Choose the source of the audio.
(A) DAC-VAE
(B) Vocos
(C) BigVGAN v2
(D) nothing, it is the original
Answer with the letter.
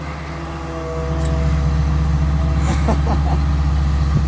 D